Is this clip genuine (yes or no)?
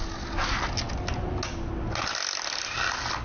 yes